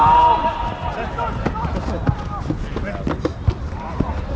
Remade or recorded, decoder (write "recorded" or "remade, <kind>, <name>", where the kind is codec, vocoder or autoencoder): recorded